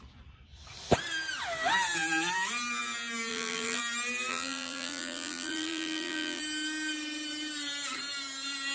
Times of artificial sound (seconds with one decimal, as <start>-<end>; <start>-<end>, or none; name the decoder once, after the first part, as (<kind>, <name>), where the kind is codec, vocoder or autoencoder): 3.3-3.8 (vocoder, BigVGAN v2); 4.3-6.4